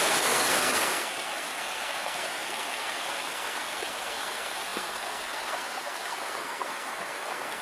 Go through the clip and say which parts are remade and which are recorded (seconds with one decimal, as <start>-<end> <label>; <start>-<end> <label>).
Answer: 0.0-7.6 remade